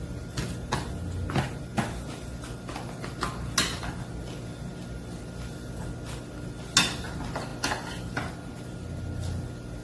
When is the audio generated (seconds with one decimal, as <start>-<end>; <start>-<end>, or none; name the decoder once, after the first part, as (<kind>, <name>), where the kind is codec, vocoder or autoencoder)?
none